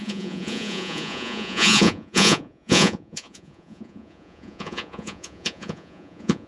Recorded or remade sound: remade